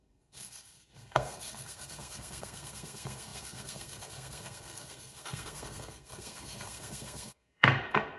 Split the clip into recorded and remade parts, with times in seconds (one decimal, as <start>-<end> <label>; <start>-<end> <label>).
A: 0.0-8.2 remade

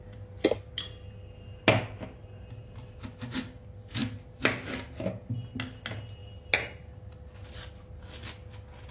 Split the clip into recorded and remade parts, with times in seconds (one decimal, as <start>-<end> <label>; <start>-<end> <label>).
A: 0.0-8.9 recorded

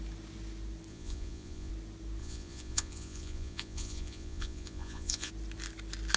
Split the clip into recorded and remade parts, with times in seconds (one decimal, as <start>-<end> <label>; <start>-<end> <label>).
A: 0.0-0.9 recorded; 0.9-1.7 remade; 1.7-2.2 recorded; 2.2-5.3 remade; 5.3-6.2 recorded

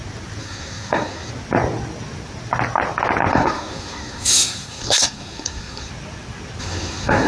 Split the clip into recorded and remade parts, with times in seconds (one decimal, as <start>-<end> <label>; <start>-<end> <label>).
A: 0.0-0.4 recorded; 0.4-1.3 remade; 1.3-3.3 recorded; 3.3-5.9 remade; 5.9-6.6 recorded; 6.6-7.3 remade

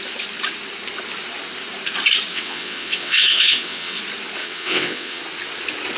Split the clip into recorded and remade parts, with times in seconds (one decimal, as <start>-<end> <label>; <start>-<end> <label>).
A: 0.0-2.3 recorded; 2.3-4.0 remade; 4.0-4.4 recorded; 4.4-5.2 remade; 5.2-6.0 recorded

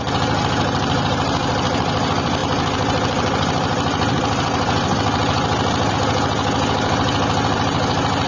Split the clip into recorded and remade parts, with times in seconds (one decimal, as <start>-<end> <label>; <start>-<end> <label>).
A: 0.0-8.3 recorded